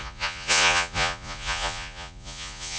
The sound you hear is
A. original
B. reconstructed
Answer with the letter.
B